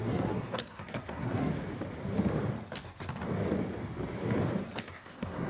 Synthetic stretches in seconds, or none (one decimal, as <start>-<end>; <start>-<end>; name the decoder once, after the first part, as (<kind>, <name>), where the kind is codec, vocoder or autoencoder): 0.0-1.5 (codec, SNAC); 4.8-5.5